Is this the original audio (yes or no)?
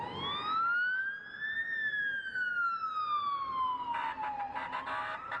yes